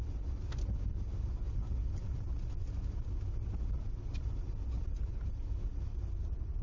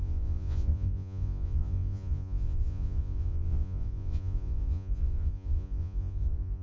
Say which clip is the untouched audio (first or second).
first